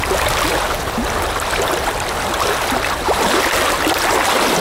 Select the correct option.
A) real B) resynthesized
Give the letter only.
A